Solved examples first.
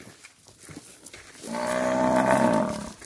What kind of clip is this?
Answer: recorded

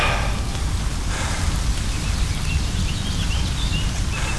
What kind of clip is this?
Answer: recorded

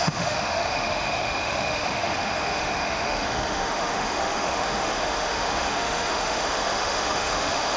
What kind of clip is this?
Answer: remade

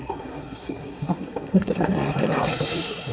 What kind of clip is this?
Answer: remade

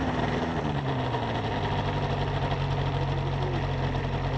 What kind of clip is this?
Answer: recorded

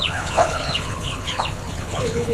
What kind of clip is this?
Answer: remade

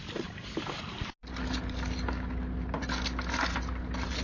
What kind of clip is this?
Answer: recorded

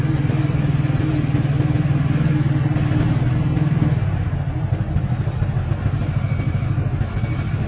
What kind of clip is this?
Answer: recorded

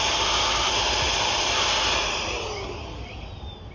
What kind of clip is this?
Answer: recorded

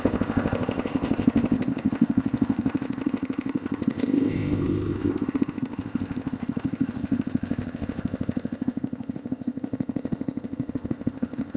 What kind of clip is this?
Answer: remade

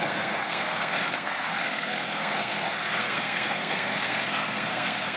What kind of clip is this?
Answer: remade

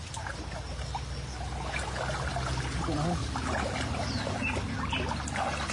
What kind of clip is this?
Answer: recorded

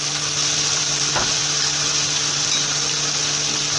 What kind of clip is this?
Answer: recorded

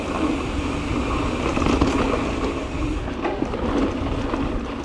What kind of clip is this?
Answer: recorded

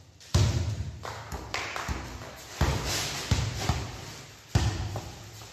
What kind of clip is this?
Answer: recorded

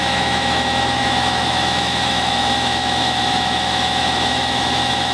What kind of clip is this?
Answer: remade